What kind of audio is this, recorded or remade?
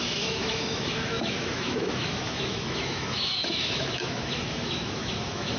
remade